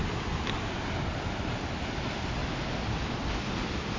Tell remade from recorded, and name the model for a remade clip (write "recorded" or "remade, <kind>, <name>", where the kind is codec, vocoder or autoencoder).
recorded